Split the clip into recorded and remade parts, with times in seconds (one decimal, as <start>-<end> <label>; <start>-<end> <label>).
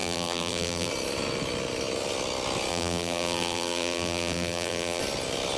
0.0-0.9 remade; 0.9-2.7 recorded; 2.7-5.0 remade; 5.0-5.6 recorded